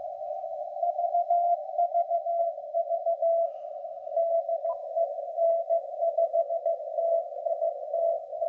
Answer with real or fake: real